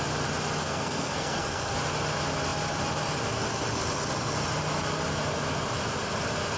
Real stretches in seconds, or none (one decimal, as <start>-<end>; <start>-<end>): 0.0-0.6; 1.7-6.6